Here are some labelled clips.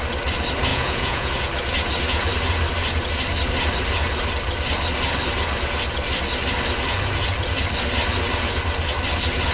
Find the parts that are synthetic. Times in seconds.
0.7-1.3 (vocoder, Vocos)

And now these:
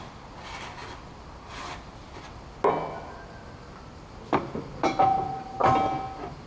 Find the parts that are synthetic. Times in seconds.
none

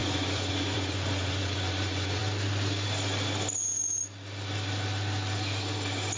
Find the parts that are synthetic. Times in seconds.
0.0-2.2 (vocoder, Vocos)

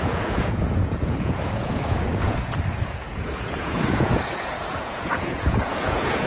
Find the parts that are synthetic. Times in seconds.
0.0-6.3 (vocoder, Vocos)

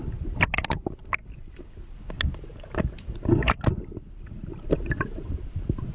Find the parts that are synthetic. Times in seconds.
none

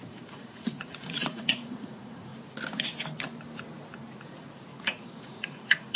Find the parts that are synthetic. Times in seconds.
0.0-2.3 (vocoder, Vocos); 4.2-6.0

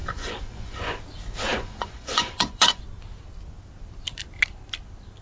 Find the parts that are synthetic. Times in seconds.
0.0-1.0 (vocoder, Vocos); 1.5-2.8